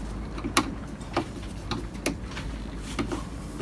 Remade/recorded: recorded